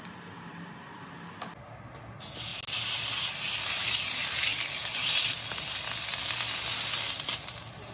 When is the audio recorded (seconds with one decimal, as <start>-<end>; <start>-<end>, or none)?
0.0-7.9